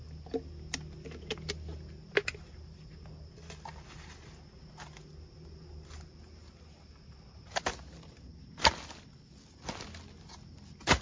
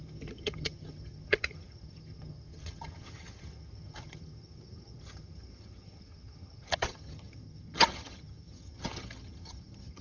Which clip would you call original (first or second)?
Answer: first